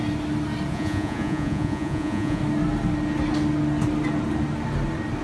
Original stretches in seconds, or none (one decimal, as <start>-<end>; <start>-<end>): 0.0-0.7; 2.4-5.2

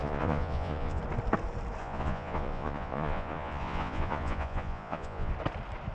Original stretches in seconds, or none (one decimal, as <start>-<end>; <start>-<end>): 1.0-1.8; 5.3-5.9

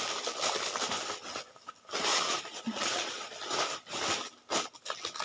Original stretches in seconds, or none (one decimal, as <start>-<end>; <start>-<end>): 0.0-2.1; 3.3-5.2

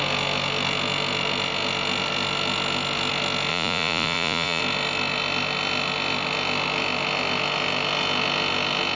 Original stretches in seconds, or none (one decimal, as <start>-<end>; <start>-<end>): 0.0-3.5; 4.6-9.0

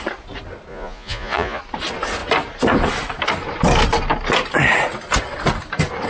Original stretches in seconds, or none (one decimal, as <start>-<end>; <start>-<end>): 0.0-0.7; 1.6-6.1

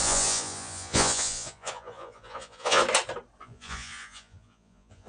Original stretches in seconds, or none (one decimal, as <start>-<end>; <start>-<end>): 2.8-3.4

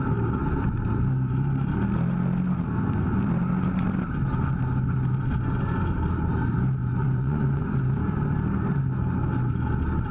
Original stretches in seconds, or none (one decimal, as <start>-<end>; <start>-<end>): 0.0-7.0; 7.6-10.1

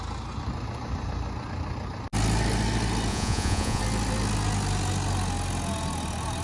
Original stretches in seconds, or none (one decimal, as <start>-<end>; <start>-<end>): 0.0-3.1; 3.8-6.4